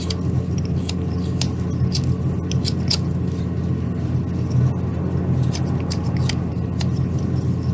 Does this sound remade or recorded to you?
recorded